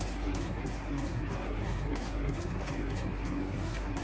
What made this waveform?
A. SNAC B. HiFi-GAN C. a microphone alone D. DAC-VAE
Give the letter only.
A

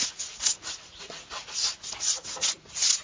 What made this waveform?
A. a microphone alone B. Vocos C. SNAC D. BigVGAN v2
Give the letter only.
B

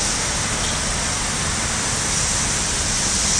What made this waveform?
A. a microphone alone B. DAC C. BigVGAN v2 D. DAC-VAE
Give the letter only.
A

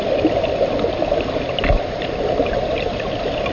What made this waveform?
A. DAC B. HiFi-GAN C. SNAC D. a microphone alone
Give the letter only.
D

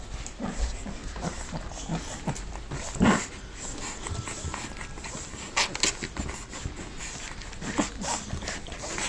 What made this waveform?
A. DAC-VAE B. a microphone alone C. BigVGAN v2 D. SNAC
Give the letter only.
B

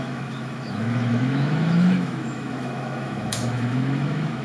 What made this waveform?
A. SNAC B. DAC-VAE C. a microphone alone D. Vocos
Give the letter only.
B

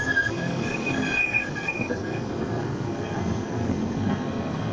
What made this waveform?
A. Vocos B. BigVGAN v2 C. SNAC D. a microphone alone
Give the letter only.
C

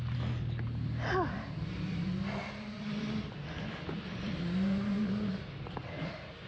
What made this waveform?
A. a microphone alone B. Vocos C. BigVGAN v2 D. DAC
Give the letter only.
A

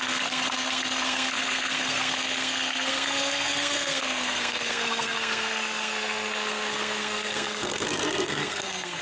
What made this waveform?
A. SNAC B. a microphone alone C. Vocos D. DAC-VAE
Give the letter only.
A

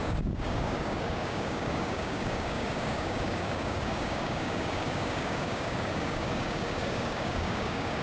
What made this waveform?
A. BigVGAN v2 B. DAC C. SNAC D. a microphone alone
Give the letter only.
B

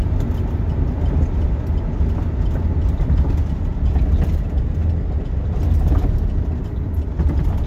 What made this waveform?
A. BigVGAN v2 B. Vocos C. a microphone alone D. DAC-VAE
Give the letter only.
C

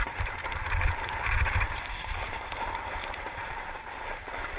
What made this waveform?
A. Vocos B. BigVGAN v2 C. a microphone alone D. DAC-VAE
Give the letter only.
B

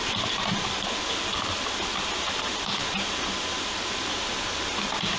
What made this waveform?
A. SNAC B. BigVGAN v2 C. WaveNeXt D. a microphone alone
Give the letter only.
B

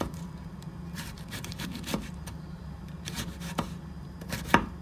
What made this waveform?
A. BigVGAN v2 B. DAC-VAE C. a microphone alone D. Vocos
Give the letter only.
A